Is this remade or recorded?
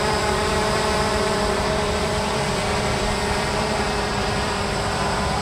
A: remade